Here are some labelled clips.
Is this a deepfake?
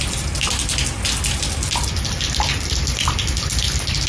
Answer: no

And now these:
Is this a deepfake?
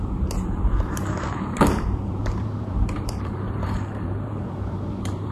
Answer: yes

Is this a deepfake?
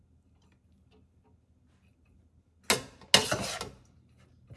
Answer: no